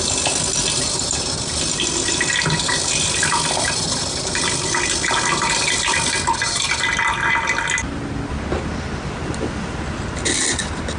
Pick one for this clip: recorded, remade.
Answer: recorded